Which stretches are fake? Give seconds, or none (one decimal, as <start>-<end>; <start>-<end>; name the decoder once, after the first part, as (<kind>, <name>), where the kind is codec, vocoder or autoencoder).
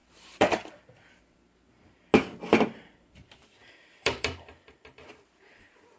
0.0-0.9 (vocoder, BigVGAN v2); 3.6-6.0